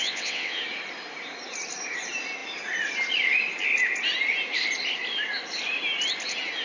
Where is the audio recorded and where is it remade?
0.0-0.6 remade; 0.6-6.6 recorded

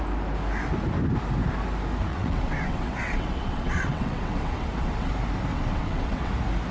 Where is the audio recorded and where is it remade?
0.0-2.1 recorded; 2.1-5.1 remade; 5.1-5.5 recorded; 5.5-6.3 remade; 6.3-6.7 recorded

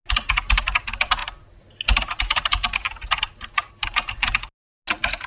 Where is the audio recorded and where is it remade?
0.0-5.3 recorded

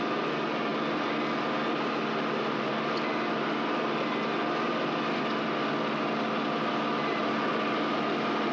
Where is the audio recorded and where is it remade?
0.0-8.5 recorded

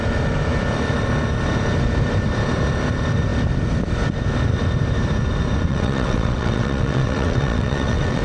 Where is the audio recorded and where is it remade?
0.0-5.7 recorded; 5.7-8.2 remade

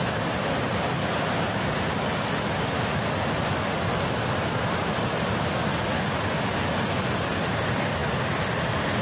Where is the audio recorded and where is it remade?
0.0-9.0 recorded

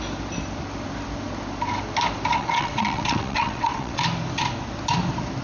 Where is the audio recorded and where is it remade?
0.0-2.4 recorded; 2.4-4.0 remade; 4.0-5.4 recorded